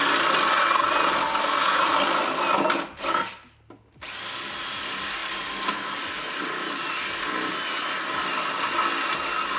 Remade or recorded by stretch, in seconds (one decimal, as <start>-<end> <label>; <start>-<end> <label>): 0.0-9.6 recorded